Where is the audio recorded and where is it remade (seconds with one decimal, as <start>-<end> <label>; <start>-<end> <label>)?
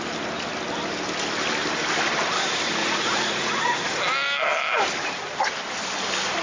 0.0-2.8 recorded; 2.8-4.0 remade; 4.0-6.4 recorded